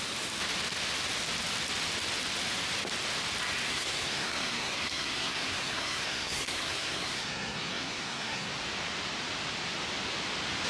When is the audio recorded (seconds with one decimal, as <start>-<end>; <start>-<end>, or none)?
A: 0.0-3.7; 8.5-10.7